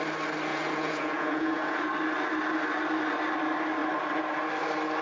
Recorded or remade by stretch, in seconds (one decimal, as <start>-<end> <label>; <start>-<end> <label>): 0.0-0.5 recorded; 0.5-1.8 remade; 1.8-5.0 recorded